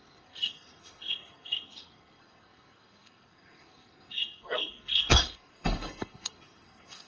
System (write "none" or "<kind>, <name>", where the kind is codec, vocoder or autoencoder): codec, SNAC